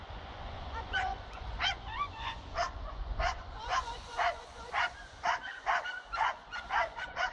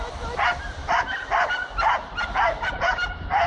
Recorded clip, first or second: second